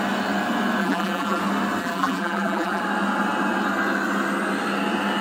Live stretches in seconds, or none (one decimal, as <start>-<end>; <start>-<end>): 0.0-0.8; 1.4-1.8; 2.8-5.2